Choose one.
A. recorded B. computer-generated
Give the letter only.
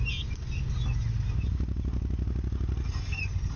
A